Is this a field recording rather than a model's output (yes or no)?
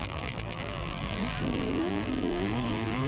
no